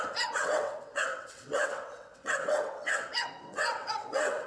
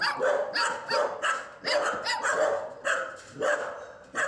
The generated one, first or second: first